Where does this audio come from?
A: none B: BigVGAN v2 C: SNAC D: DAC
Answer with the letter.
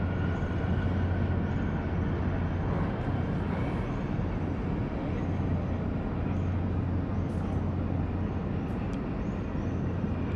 A